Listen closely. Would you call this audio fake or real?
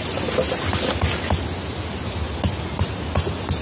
real